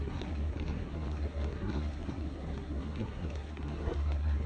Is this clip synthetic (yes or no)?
yes